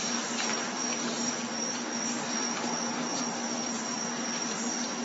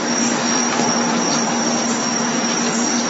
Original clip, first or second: second